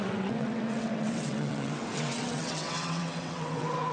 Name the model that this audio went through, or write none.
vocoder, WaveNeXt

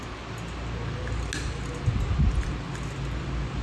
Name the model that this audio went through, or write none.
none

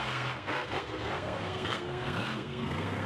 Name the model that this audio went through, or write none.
codec, SNAC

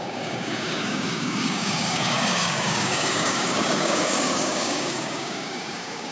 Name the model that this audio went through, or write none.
codec, DAC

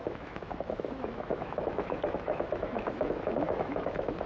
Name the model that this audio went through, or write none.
autoencoder, DAC-VAE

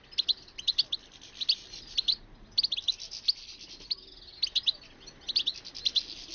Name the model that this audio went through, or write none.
none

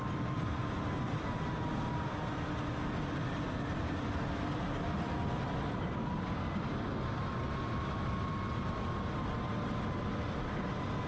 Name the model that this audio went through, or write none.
none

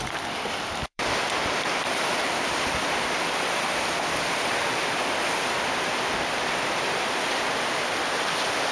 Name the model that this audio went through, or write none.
vocoder, BigVGAN v2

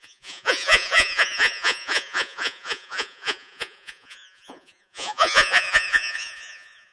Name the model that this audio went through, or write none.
vocoder, Vocos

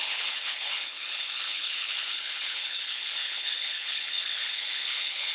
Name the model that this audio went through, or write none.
codec, HILCodec